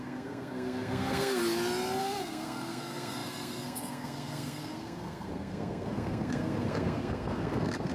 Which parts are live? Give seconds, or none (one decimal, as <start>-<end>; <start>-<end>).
1.4-2.0